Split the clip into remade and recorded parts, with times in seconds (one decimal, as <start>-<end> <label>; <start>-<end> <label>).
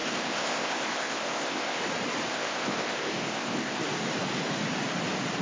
0.0-1.8 remade; 1.8-2.3 recorded; 2.3-3.8 remade; 3.8-5.4 recorded